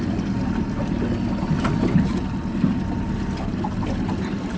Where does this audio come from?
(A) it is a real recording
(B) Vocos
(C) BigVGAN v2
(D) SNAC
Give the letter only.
A